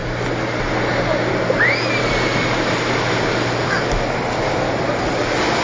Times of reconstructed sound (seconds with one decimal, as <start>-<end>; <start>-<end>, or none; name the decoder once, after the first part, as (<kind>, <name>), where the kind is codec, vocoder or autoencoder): none